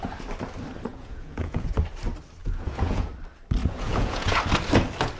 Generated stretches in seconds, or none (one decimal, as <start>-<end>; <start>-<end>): 0.9-1.7; 2.4-3.1; 3.6-4.4